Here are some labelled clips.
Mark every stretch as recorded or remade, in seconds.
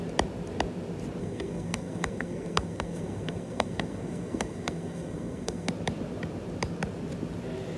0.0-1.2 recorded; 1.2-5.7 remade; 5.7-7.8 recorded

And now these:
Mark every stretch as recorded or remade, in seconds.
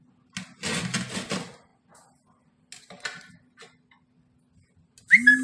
0.0-5.4 recorded